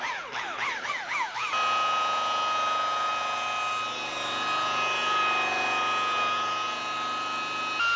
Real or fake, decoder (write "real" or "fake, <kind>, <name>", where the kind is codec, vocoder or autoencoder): real